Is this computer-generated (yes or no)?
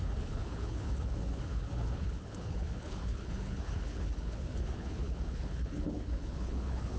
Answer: yes